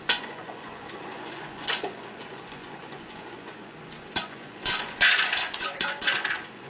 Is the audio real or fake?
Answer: fake